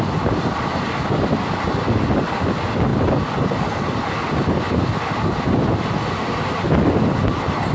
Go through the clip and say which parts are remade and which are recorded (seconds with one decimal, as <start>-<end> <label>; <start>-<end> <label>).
0.0-7.7 recorded